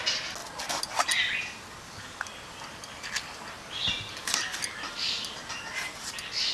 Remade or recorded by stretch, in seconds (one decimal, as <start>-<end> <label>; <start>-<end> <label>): 0.0-6.5 recorded